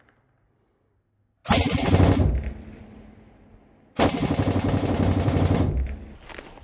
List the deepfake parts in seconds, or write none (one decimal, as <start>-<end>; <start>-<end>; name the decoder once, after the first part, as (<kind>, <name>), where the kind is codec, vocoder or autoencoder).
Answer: none